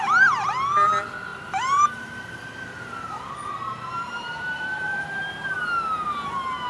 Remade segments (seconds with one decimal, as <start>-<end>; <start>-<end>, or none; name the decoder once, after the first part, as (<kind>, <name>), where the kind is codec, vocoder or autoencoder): 1.3-5.3 (vocoder, BigVGAN v2)